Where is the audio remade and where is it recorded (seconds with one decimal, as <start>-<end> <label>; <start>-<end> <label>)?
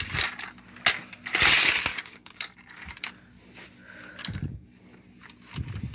0.0-1.9 recorded; 1.9-3.1 remade; 3.1-4.2 recorded; 4.2-4.8 remade; 4.8-5.9 recorded